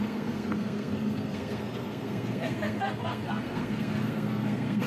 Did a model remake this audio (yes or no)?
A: yes